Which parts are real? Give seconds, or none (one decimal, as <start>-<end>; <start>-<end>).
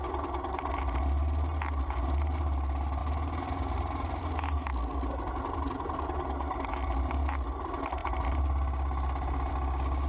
0.0-10.1